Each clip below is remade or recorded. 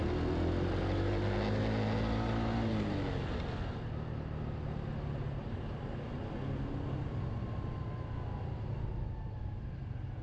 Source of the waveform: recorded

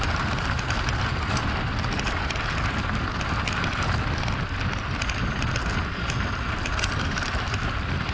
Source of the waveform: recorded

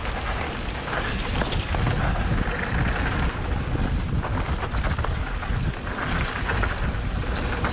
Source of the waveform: recorded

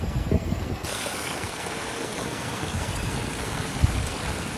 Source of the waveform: remade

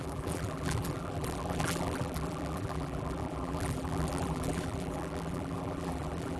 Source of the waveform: remade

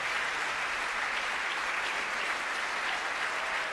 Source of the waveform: recorded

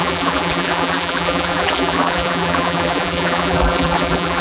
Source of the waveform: remade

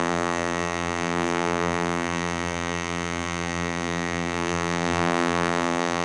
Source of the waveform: remade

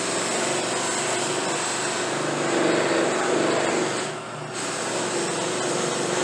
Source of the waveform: recorded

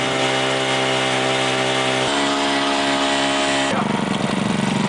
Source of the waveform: recorded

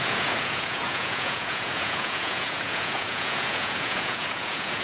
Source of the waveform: remade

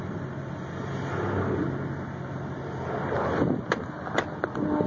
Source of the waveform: recorded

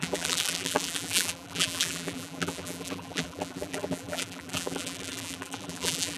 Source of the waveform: remade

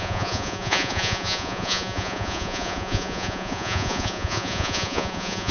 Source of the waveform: remade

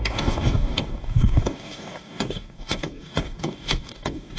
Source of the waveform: remade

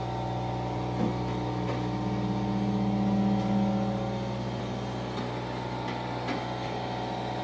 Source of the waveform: recorded